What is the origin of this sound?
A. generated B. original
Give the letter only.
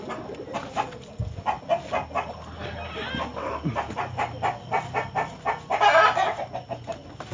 B